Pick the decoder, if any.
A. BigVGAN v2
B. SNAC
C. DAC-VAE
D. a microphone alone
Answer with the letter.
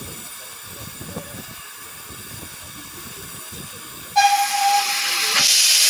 D